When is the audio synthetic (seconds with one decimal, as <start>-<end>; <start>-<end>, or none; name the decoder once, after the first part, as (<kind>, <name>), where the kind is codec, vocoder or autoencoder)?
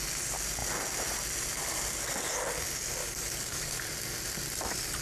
3.0-3.8 (codec, DAC)